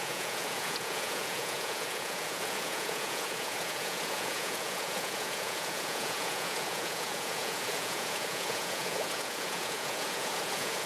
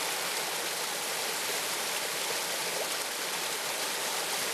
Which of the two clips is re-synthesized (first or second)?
first